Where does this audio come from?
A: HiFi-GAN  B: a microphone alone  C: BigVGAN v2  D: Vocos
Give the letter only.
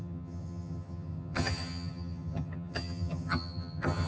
A